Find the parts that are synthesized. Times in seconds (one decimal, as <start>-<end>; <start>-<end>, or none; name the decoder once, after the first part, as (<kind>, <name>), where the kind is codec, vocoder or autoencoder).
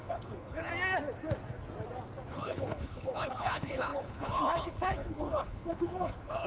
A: 0.0-0.7 (codec, HILCodec); 2.3-6.5